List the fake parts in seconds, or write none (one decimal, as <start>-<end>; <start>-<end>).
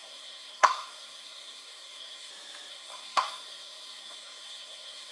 0.0-2.3; 2.7-5.1